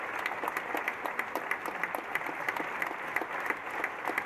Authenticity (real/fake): real